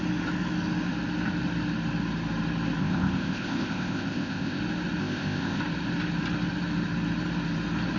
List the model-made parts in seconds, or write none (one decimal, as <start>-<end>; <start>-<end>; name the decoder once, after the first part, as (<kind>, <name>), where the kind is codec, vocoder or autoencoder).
2.8-4.6 (codec, ZipCodec); 5.0-5.6